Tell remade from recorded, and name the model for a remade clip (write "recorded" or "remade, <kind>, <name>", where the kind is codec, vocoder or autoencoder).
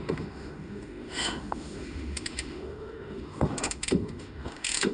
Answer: remade, autoencoder, DAC-VAE